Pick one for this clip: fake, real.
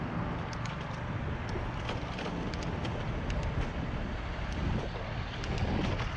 real